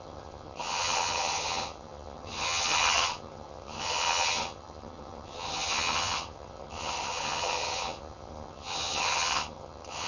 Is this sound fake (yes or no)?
yes